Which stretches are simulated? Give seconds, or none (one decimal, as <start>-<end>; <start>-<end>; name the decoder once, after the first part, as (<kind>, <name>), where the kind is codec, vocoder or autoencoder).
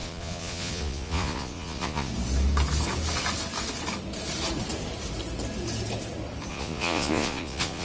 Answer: 0.0-2.1 (vocoder, Vocos); 6.5-7.8